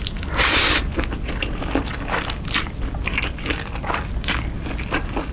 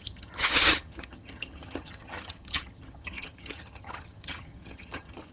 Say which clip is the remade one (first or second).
second